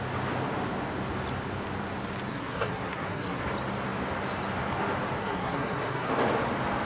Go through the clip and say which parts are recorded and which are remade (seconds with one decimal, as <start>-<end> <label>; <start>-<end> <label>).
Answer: 0.0-2.3 recorded; 2.3-3.4 remade; 3.4-5.2 recorded; 5.2-6.1 remade; 6.1-6.9 recorded